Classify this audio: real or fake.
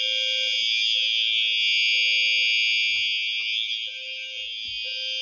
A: real